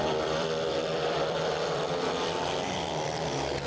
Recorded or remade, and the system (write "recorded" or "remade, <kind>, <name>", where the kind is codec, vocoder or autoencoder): remade, vocoder, BigVGAN v2